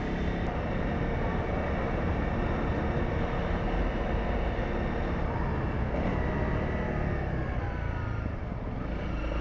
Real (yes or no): yes